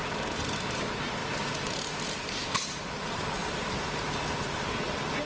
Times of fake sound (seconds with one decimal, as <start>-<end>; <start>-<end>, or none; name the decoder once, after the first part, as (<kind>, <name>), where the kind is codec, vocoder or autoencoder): 1.2-3.0 (vocoder, BigVGAN v2); 3.4-4.6